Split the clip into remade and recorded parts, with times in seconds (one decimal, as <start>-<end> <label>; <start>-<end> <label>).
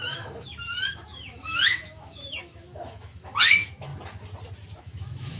0.0-3.9 remade; 3.9-4.8 recorded; 4.8-5.4 remade